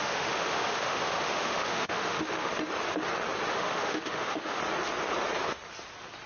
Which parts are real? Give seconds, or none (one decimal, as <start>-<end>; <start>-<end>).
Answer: 2.5-3.5; 4.6-6.3